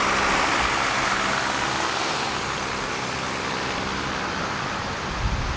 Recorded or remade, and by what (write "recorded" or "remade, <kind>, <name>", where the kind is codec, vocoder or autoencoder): recorded